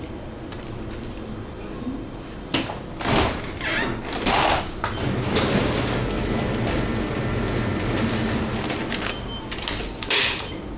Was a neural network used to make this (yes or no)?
no